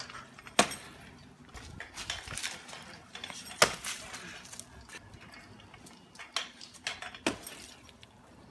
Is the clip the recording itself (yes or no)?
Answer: yes